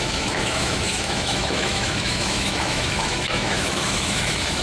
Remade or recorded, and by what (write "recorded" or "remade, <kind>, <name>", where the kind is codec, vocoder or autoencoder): remade, autoencoder, DAC-VAE